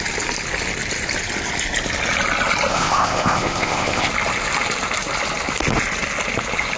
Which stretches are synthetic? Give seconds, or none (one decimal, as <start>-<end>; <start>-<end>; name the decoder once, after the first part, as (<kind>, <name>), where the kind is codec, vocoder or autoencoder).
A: 2.7-4.1 (codec, ZipCodec)